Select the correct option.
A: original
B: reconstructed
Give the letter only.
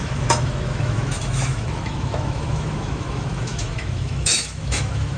B